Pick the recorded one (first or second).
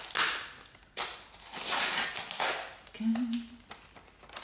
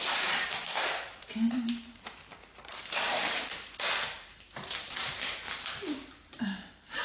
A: first